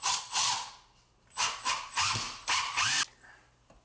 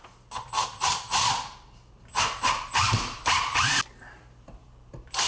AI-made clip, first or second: second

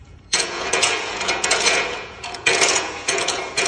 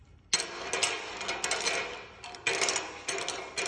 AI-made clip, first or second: first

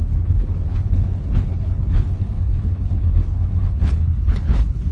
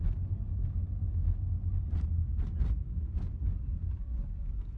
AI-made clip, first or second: first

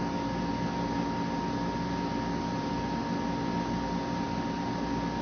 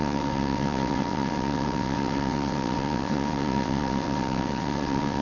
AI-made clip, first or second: second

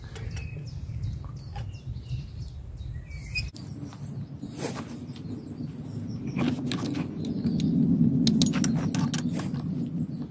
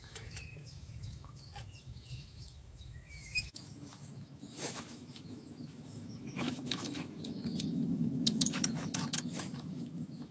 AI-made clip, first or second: second